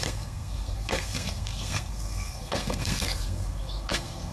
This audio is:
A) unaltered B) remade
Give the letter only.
B